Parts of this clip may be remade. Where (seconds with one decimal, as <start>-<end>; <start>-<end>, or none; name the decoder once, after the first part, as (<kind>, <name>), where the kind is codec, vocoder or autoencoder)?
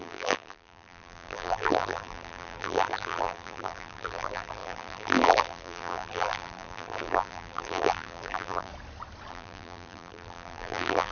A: 0.0-8.7 (vocoder, BigVGAN v2); 9.3-11.1